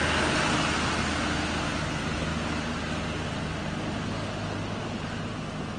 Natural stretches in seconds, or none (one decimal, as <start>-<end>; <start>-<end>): 0.0-5.8